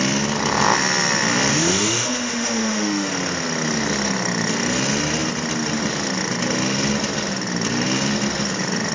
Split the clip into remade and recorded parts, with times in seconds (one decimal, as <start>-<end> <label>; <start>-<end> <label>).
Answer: 0.0-1.5 recorded; 1.5-3.1 remade; 3.1-8.9 recorded